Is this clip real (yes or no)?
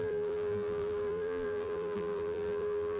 no